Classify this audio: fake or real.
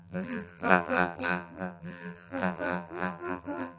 fake